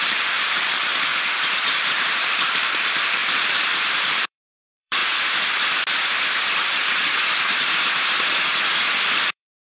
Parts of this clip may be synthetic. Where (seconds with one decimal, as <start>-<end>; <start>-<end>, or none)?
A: 0.0-1.1; 1.8-5.0; 9.1-9.7